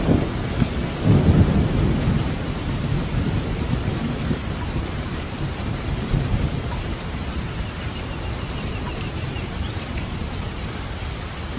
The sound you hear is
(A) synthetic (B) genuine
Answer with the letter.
A